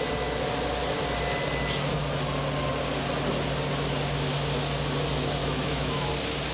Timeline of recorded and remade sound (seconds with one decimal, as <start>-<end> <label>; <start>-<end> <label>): 0.0-5.4 recorded; 5.4-6.1 remade; 6.1-6.5 recorded